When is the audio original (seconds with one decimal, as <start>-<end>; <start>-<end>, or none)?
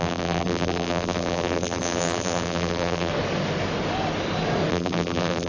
3.1-4.7